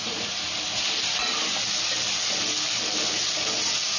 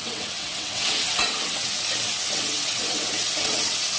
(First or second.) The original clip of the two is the first